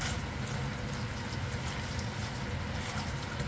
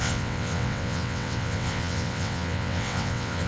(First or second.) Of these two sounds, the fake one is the second